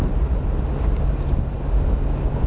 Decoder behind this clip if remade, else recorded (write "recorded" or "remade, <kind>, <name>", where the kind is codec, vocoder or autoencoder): recorded